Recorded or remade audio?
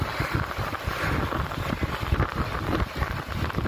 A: recorded